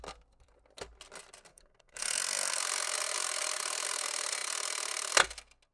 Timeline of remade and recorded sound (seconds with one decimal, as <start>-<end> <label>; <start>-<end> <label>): 0.0-1.5 recorded; 1.5-2.6 remade; 2.6-5.7 recorded